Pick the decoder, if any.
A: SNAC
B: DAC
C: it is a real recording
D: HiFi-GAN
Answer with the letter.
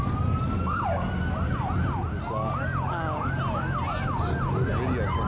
C